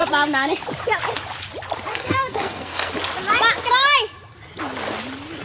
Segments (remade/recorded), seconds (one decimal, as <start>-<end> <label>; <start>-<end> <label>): 0.0-1.9 recorded; 1.9-2.9 remade; 2.9-5.4 recorded